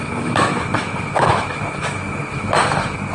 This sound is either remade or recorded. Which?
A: remade